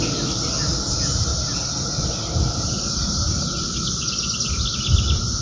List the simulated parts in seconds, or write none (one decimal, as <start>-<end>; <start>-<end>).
none